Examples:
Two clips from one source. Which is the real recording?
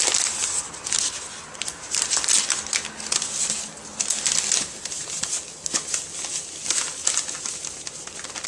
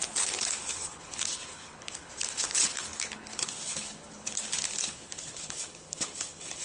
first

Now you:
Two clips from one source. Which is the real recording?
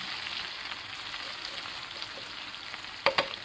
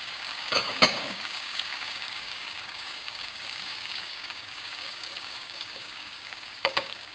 first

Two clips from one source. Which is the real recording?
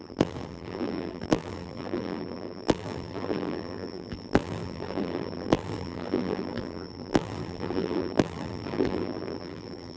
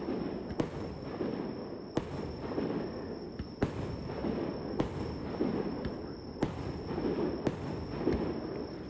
second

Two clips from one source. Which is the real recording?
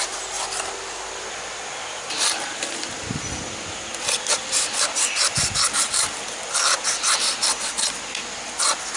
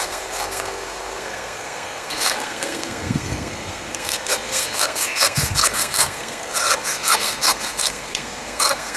first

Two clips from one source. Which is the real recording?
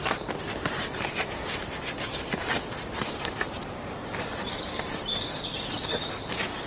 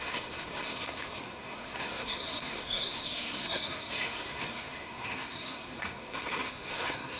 first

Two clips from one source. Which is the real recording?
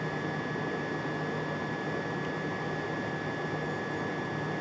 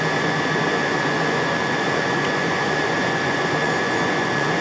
first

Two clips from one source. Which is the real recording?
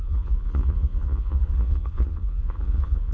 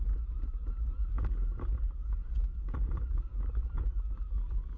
second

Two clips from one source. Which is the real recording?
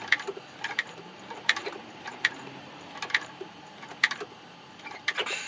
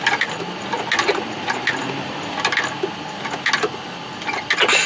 second